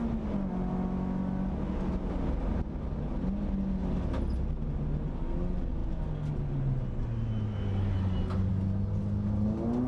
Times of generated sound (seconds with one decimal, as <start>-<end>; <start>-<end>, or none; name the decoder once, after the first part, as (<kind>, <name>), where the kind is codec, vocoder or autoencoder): none